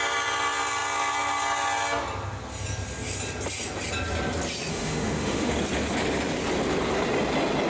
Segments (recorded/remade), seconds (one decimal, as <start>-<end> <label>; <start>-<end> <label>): 0.0-4.7 recorded; 4.7-5.5 remade; 5.5-7.7 recorded